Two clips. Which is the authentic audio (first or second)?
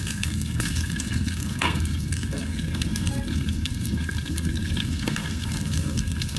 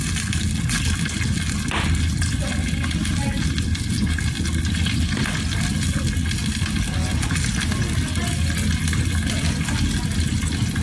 second